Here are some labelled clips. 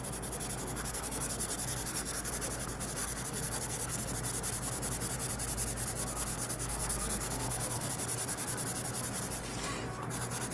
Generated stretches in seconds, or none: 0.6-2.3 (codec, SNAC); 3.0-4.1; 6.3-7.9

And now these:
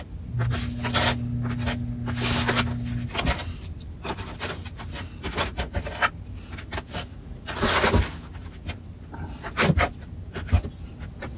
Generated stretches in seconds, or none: 7.1-7.7 (vocoder, Vocos)

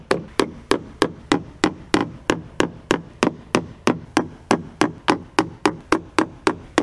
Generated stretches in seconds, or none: none

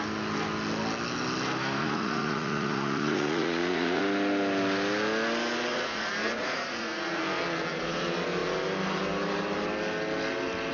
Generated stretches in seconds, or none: 1.8-4.0 (vocoder, Vocos); 5.7-7.2

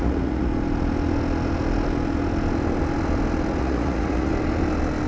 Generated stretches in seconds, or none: 0.0-0.5 (vocoder, Vocos); 3.6-4.3

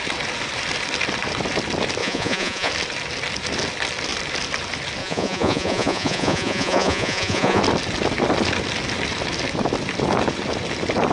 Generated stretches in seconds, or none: 2.0-2.7 (vocoder, Vocos); 5.0-7.6